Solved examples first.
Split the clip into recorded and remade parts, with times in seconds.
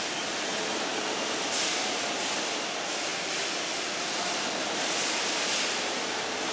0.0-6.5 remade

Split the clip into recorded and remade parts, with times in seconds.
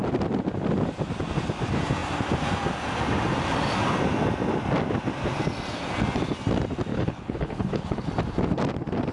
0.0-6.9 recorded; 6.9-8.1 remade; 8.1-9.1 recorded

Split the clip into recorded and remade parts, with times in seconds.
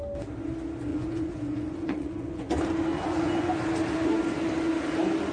0.0-0.9 recorded; 0.9-2.5 remade; 2.5-2.9 recorded; 2.9-3.5 remade; 3.5-5.3 recorded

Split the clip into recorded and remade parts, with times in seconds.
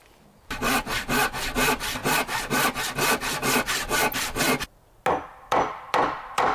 0.0-0.6 remade; 0.6-6.5 recorded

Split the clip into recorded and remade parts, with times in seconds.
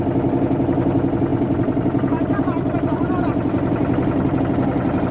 0.0-1.3 recorded; 1.3-4.4 remade; 4.4-5.1 recorded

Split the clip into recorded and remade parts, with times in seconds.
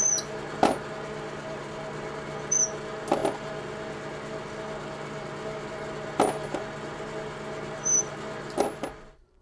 0.0-9.4 recorded